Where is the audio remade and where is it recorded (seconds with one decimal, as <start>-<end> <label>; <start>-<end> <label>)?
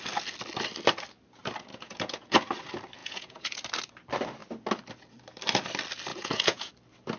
0.0-1.7 recorded; 1.7-2.4 remade; 2.4-3.0 recorded; 3.0-3.6 remade; 3.6-6.1 recorded; 6.1-6.7 remade; 6.7-7.2 recorded